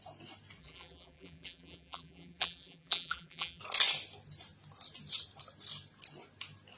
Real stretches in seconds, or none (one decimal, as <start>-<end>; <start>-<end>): 0.0-0.6; 3.6-6.8